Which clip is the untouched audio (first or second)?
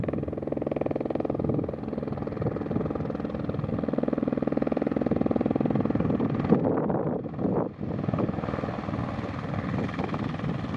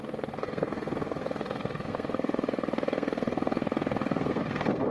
first